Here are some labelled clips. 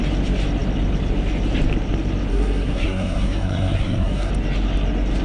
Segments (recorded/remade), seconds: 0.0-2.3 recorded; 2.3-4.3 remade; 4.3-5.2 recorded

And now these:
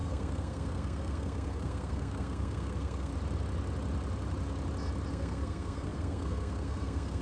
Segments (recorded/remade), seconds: 0.0-3.1 remade; 3.1-5.1 recorded; 5.1-7.2 remade

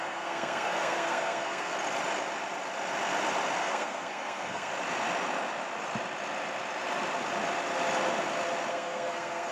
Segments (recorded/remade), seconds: 0.0-1.7 remade; 1.7-3.6 recorded; 3.6-4.7 remade; 4.7-8.7 recorded; 8.7-9.5 remade